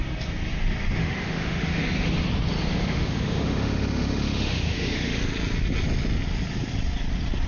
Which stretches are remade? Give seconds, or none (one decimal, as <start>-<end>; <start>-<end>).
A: 1.0-1.8; 2.7-5.2